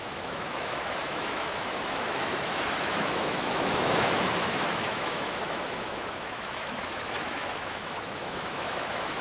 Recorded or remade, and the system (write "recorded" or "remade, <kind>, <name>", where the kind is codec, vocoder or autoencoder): remade, autoencoder, DAC-VAE